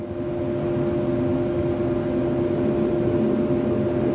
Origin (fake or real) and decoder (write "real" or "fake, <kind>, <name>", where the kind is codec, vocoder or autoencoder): real